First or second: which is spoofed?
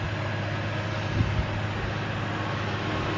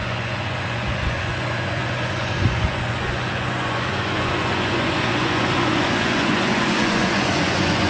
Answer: second